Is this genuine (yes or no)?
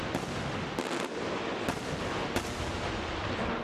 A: yes